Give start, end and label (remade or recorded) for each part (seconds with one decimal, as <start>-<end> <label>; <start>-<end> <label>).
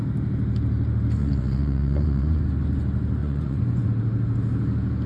0.0-1.2 recorded; 1.2-2.4 remade; 2.4-3.2 recorded; 3.2-3.9 remade; 3.9-5.1 recorded